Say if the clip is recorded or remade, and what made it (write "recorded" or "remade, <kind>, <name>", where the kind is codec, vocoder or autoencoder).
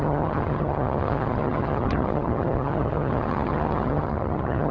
remade, vocoder, HiFi-GAN